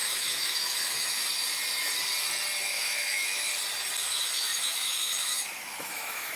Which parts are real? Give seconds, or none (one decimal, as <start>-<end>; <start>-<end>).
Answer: 1.2-2.6; 3.5-4.0